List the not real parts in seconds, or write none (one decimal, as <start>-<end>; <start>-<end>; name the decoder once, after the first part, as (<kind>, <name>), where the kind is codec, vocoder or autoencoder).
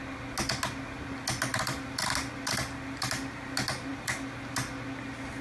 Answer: 1.5-2.0 (vocoder, BigVGAN v2)